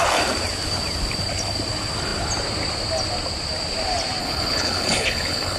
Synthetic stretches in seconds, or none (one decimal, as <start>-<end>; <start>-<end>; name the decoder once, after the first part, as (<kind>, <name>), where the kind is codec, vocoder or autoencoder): 4.2-5.6 (codec, HILCodec)